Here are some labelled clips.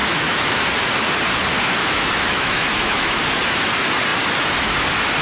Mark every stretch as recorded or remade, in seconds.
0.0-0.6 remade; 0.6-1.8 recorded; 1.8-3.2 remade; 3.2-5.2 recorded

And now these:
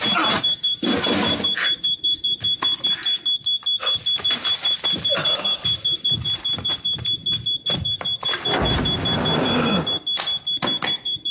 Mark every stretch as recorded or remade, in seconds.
0.0-3.0 remade; 3.0-4.2 recorded; 4.2-7.2 remade; 7.2-7.7 recorded; 7.7-9.7 remade; 9.7-10.9 recorded; 10.9-11.3 remade